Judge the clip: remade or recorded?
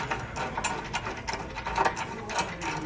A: recorded